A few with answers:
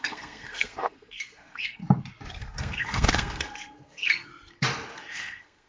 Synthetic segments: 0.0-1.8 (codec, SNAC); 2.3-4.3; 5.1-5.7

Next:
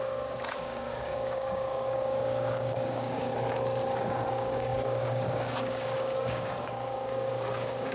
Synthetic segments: 0.0-3.3 (codec, DAC); 4.0-7.9